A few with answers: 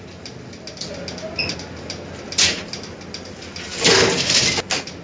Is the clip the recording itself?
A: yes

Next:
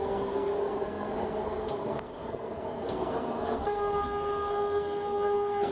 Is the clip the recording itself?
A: no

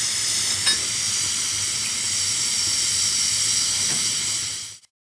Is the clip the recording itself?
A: yes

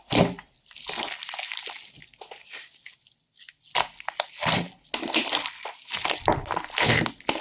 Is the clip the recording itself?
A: yes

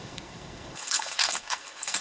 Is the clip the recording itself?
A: no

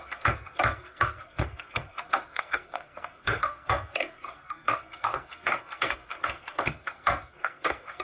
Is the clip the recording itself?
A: no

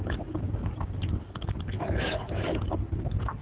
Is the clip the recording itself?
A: yes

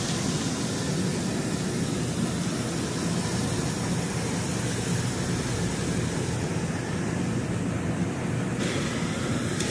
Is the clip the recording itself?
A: yes